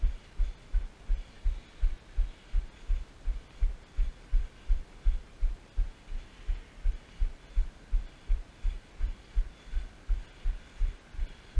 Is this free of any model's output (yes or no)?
yes